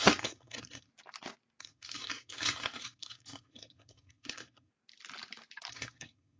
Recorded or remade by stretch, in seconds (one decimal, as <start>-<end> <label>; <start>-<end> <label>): 0.0-0.9 remade; 0.9-1.6 recorded; 1.6-4.7 remade; 4.7-5.7 recorded; 5.7-6.4 remade